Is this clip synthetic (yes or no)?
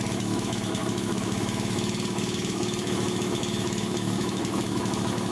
yes